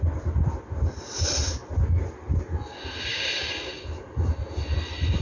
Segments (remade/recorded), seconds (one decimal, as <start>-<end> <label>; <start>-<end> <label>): 0.0-3.1 recorded; 3.1-3.8 remade; 3.8-5.2 recorded